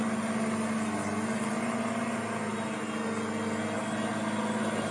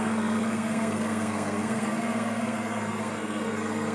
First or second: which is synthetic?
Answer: second